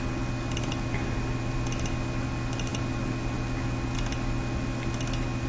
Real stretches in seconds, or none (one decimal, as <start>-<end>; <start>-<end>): 0.0-5.5